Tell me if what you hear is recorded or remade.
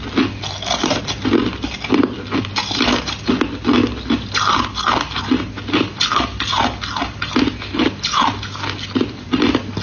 recorded